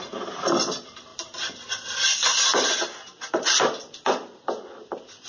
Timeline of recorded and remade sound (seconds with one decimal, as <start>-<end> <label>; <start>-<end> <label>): 0.0-5.3 recorded